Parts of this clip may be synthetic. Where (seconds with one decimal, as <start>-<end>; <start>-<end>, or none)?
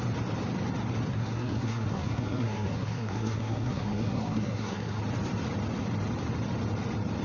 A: 1.1-5.0